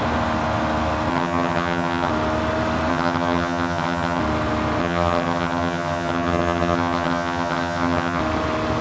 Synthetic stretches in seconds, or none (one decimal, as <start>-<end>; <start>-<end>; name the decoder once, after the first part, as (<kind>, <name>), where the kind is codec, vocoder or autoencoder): 1.1-2.1 (vocoder, HiFi-GAN); 2.9-4.2; 4.8-8.2